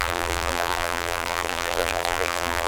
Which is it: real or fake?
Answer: fake